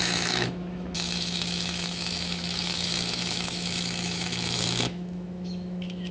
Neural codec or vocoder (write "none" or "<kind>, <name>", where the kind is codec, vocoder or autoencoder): autoencoder, DAC-VAE